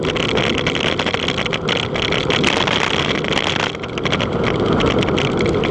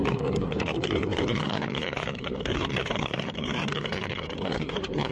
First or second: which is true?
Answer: first